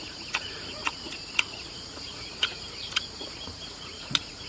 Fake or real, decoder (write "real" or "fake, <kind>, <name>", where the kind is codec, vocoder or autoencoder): fake, vocoder, Vocos